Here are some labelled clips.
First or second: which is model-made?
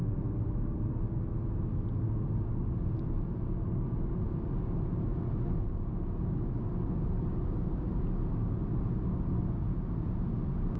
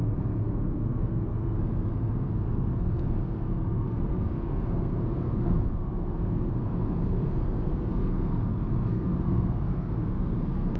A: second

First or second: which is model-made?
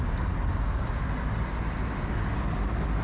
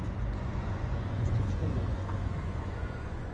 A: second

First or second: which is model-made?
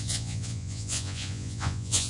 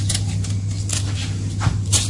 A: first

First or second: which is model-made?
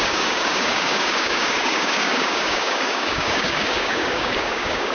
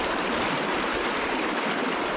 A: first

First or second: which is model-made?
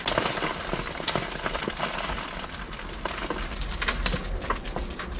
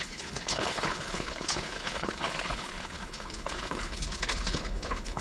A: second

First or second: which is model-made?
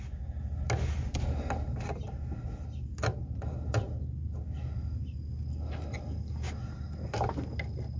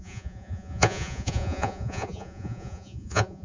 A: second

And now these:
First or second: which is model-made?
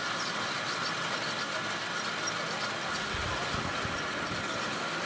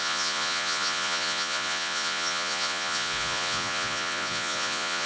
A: second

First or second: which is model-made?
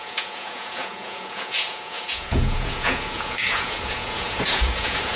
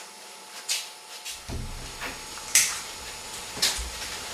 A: first